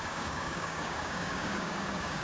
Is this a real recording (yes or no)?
no